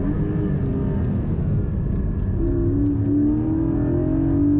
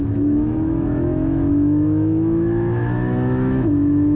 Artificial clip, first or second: second